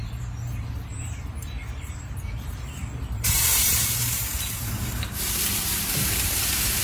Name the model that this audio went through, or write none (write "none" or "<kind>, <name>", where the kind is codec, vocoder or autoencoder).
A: vocoder, BigVGAN v2